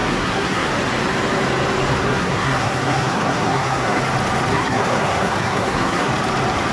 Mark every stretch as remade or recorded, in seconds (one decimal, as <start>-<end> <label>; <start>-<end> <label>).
0.0-0.7 remade; 0.7-2.0 recorded; 2.0-4.0 remade; 4.0-4.5 recorded; 4.5-6.1 remade; 6.1-6.7 recorded

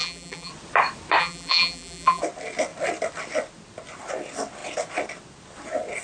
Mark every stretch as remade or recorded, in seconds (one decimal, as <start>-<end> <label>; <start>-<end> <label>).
0.0-0.5 remade; 0.5-1.2 recorded; 1.2-2.2 remade; 2.2-6.0 recorded

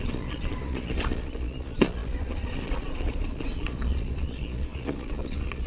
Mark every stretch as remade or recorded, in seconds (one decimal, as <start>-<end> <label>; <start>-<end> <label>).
0.0-5.7 remade

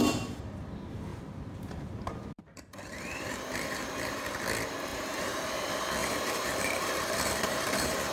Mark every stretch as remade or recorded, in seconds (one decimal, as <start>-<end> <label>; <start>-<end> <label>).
0.0-1.1 recorded; 1.1-4.2 remade; 4.2-4.9 recorded; 4.9-5.5 remade; 5.5-6.0 recorded; 6.0-8.1 remade

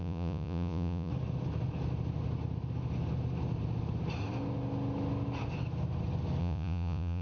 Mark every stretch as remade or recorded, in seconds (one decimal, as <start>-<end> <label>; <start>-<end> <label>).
0.0-1.1 remade; 1.1-6.4 recorded; 6.4-7.2 remade

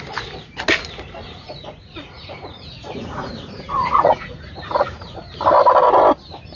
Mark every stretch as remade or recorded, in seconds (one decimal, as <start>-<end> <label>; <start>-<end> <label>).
0.0-1.2 recorded; 1.2-5.2 remade; 5.2-6.6 recorded

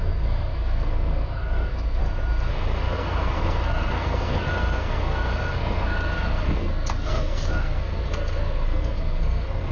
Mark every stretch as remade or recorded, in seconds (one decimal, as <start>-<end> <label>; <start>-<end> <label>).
0.0-2.0 remade; 2.0-2.5 recorded; 2.5-9.7 remade

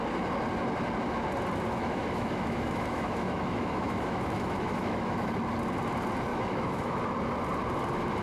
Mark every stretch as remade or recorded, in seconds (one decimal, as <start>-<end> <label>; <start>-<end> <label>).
0.0-1.7 recorded; 1.7-5.3 remade; 5.3-6.3 recorded; 6.3-7.0 remade; 7.0-8.2 recorded